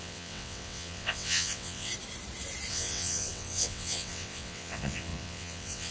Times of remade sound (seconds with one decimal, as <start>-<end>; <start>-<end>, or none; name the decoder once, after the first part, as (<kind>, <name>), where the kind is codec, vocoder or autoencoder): 0.0-1.9 (vocoder, WaveNeXt); 2.7-5.9